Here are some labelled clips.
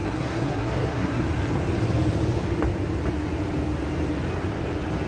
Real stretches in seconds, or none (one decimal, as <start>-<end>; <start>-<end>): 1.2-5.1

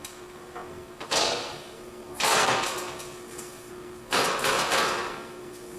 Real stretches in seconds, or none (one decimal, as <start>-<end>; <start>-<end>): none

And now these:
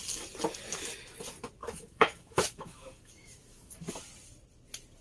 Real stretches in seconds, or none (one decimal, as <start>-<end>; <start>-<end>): 0.0-1.6; 3.9-5.0

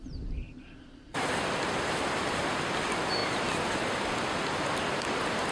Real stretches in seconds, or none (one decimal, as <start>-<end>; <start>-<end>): 0.0-5.5

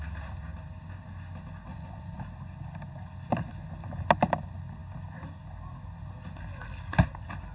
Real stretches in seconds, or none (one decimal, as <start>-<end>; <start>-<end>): 0.0-1.7; 2.2-7.5

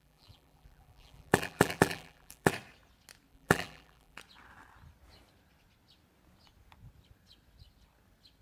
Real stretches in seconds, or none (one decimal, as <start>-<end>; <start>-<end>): 2.5-3.3; 4.2-8.4

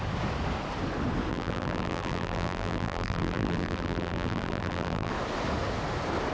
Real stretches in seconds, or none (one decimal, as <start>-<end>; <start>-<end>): 0.0-1.3; 5.1-6.3

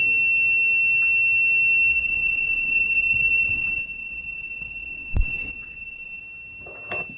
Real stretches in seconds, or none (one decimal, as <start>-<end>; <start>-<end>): 0.0-1.9; 6.2-7.2